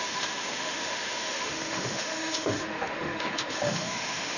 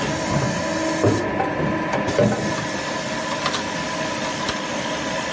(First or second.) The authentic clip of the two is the second